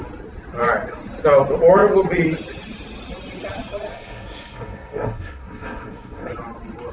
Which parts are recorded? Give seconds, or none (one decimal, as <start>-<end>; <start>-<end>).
0.0-3.9; 6.3-6.9